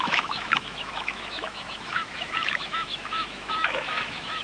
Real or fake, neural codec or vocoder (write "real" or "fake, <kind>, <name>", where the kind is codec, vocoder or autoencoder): fake, autoencoder, DAC-VAE